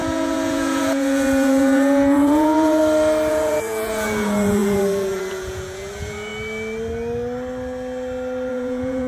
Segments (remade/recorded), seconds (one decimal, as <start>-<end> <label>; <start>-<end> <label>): 0.0-2.8 remade; 2.8-3.3 recorded; 3.3-6.3 remade; 6.3-8.5 recorded; 8.5-9.1 remade

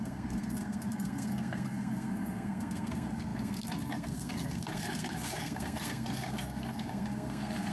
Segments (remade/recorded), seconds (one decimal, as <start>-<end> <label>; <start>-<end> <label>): 0.0-7.7 remade